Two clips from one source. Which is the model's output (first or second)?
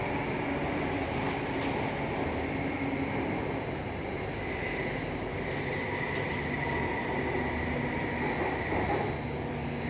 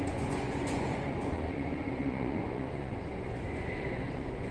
second